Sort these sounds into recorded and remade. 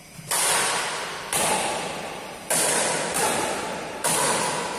recorded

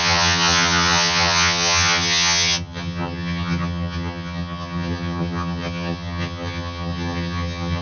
remade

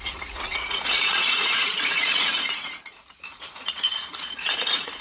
remade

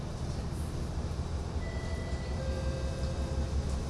recorded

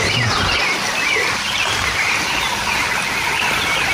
remade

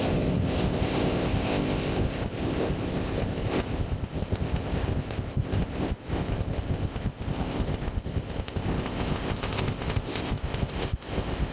remade